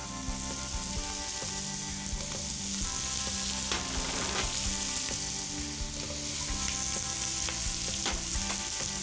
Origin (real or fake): real